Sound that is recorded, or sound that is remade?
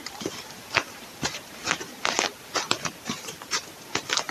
remade